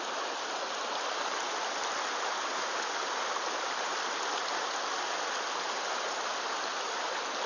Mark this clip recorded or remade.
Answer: recorded